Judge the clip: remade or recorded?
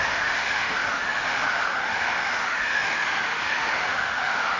remade